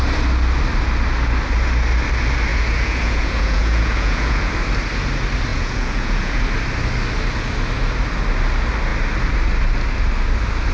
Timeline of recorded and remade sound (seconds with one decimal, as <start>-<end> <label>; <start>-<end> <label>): 0.0-2.5 recorded; 2.5-4.5 remade; 4.5-5.5 recorded; 5.5-6.4 remade; 6.4-10.7 recorded